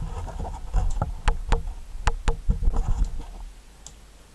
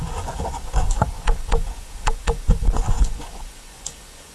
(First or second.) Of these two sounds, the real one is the first